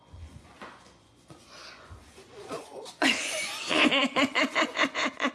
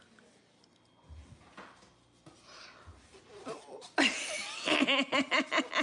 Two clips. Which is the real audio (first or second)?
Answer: second